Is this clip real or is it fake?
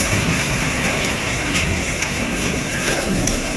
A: fake